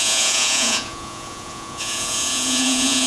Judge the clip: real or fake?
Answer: fake